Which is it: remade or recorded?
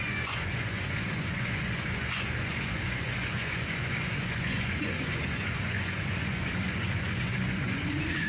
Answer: remade